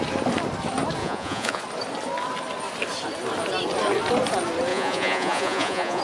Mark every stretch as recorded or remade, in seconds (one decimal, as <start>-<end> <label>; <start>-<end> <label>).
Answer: 0.0-1.0 recorded; 1.0-1.6 remade; 1.6-4.7 recorded; 4.7-6.0 remade